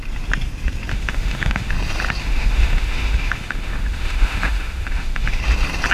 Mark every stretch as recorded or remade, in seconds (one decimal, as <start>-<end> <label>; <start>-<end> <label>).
0.0-0.9 recorded; 0.9-1.7 remade; 1.7-2.2 recorded; 2.2-5.4 remade; 5.4-5.9 recorded

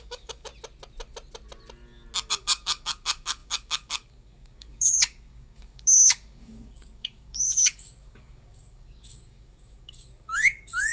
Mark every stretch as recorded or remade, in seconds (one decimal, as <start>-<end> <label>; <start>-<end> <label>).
0.0-0.5 remade; 0.5-2.3 recorded; 2.3-10.9 remade

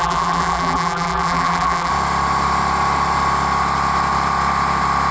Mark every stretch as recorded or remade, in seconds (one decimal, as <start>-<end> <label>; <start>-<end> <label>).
0.0-1.9 remade; 1.9-5.1 recorded

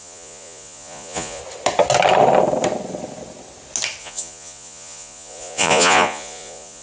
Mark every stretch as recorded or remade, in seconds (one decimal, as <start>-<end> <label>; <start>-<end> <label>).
0.0-1.4 remade; 1.4-4.0 recorded; 4.0-6.8 remade

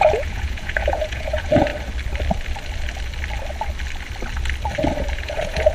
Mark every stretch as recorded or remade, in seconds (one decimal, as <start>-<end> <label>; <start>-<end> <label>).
0.0-1.7 remade; 1.7-5.1 recorded; 5.1-5.7 remade